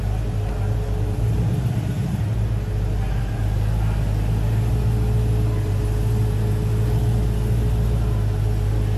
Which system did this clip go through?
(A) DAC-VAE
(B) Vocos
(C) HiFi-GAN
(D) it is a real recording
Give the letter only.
D